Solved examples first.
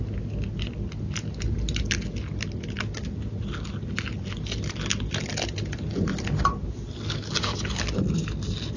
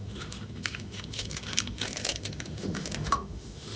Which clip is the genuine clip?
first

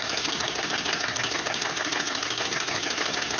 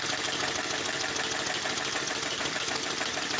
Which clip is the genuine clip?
second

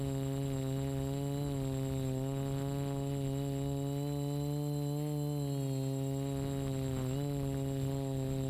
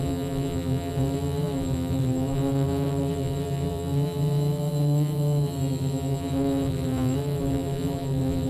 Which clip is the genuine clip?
first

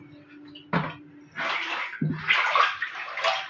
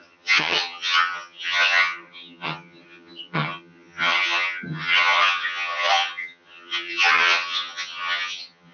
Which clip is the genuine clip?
first